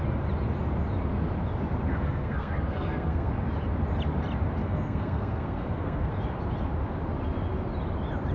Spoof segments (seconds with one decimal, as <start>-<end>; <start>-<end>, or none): 1.9-3.3; 4.6-6.1